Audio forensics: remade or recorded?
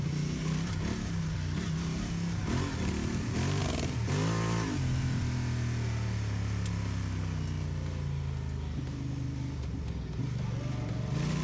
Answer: recorded